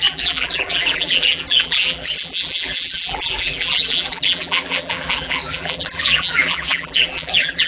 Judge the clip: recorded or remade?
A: remade